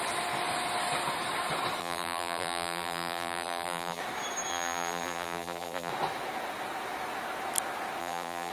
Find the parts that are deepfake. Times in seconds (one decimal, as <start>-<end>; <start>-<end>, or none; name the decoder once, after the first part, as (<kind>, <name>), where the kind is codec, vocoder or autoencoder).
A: 1.8-4.0 (vocoder, BigVGAN v2); 4.5-5.9; 8.0-8.5